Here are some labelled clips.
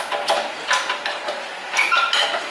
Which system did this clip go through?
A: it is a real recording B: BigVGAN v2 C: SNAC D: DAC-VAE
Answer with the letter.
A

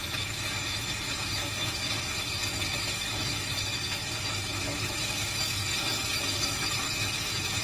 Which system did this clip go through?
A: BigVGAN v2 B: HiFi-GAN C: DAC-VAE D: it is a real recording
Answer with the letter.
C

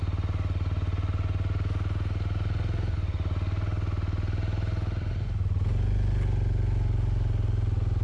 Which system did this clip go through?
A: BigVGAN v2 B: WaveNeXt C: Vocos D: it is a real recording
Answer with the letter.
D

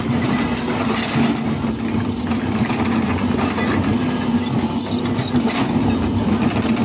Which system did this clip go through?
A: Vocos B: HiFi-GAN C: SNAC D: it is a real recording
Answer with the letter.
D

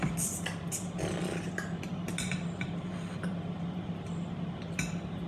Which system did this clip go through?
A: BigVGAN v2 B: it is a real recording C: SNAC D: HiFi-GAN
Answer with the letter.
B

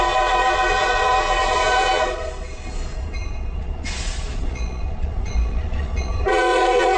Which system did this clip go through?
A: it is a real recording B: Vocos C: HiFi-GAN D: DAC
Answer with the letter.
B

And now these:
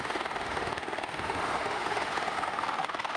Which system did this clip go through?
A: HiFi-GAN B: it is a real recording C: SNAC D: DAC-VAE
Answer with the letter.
D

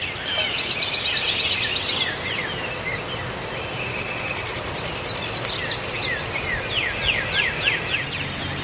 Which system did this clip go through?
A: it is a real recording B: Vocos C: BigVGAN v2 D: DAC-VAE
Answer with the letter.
A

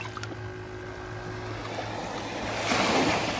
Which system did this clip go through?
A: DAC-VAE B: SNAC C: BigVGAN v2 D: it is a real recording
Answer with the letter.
D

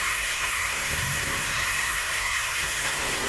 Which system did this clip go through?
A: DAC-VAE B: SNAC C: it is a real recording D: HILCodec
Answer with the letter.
B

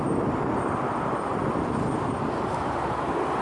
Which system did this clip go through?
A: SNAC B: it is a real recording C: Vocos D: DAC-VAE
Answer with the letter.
B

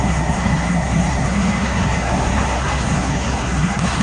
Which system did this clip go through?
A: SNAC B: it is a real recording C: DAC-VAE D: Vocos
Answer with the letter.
A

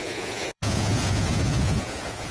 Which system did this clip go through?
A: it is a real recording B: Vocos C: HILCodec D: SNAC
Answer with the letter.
B